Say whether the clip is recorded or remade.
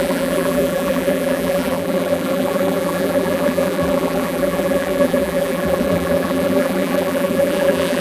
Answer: remade